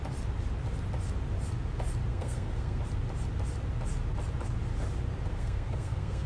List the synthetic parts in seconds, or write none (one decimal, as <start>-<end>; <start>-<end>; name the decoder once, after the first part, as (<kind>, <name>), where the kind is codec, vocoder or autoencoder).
2.1-2.8 (codec, SNAC); 5.3-6.3

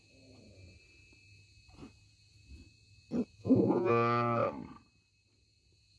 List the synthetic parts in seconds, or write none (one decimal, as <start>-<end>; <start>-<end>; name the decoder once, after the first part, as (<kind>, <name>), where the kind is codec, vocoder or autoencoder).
3.4-3.9 (vocoder, Vocos)

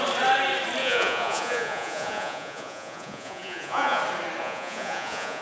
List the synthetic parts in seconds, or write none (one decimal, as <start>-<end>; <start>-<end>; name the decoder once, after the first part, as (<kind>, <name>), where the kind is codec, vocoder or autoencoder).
0.8-4.0 (vocoder, Vocos); 4.4-5.4

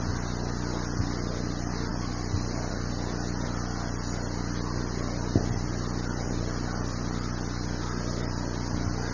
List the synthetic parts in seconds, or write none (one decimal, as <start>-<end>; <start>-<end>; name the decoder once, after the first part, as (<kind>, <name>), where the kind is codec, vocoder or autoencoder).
none

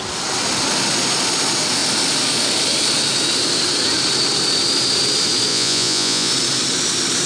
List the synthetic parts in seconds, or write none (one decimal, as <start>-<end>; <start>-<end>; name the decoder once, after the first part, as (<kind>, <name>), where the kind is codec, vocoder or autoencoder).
5.5-6.3 (vocoder, Vocos)